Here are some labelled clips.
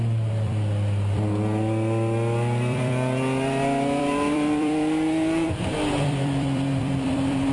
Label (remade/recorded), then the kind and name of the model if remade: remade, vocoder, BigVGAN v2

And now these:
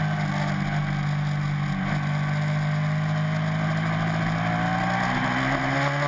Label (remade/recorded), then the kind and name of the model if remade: recorded